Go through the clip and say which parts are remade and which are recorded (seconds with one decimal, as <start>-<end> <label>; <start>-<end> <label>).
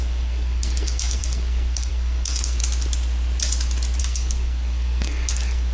0.0-2.6 remade; 2.6-4.0 recorded; 4.0-5.7 remade